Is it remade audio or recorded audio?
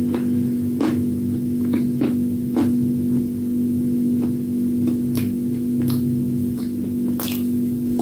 remade